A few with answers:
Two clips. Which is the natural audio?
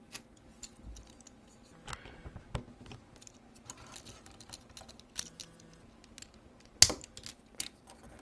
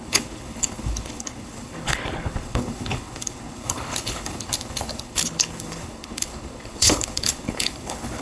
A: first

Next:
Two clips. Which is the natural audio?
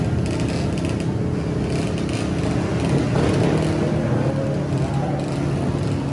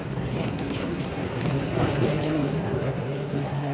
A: first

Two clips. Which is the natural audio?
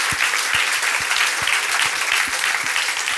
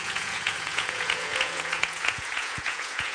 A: first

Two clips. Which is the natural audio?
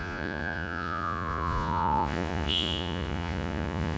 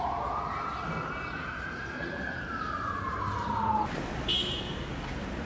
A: second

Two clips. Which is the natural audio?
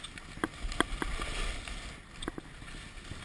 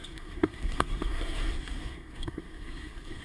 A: first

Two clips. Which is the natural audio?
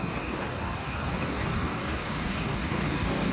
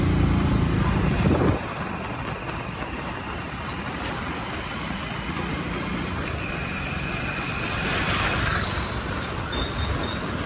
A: second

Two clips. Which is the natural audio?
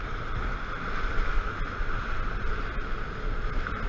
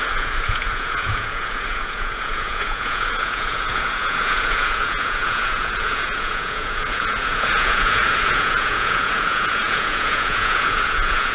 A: first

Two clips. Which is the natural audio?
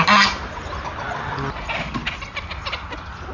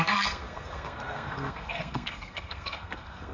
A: first